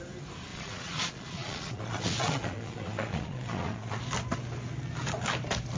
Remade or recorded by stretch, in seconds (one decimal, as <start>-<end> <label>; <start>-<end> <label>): 0.0-0.5 recorded; 0.5-4.0 remade; 4.0-5.8 recorded